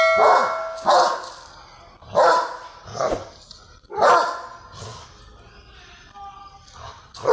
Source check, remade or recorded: recorded